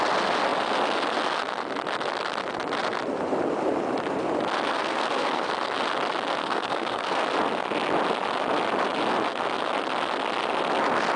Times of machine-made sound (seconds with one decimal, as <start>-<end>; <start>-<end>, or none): 4.7-5.5; 6.4-7.2